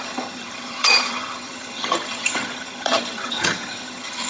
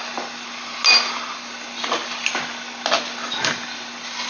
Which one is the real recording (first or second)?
second